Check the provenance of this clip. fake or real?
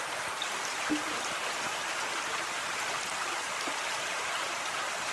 real